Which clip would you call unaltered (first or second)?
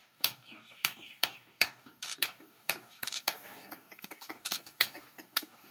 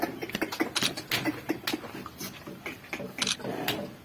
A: second